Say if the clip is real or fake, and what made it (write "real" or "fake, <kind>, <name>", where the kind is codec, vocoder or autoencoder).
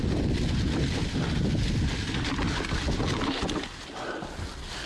real